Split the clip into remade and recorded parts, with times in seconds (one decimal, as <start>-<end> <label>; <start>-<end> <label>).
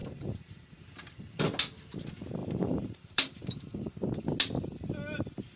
0.0-1.5 remade; 1.5-2.4 recorded; 2.4-3.9 remade; 3.9-5.6 recorded